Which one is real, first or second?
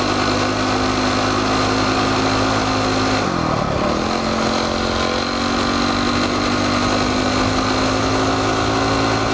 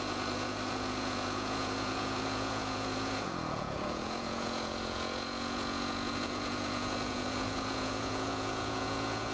first